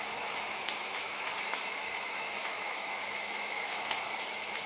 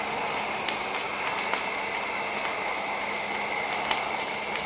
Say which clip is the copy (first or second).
first